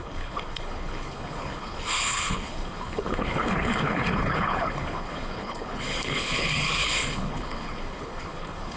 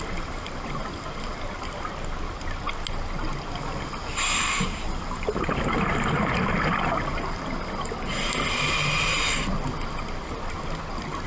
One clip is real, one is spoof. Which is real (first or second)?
second